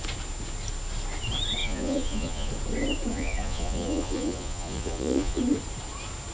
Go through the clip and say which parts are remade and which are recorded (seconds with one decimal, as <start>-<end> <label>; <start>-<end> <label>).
0.0-1.6 recorded; 1.6-2.5 remade; 2.5-3.1 recorded; 3.1-5.4 remade; 5.4-6.3 recorded